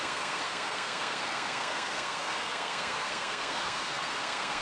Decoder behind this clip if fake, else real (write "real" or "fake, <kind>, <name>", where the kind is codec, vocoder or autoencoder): fake, codec, SNAC